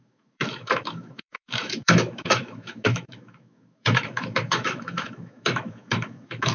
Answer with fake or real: fake